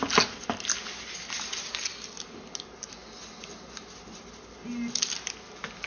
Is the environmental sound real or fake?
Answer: real